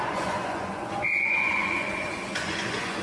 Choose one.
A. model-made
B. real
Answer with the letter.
A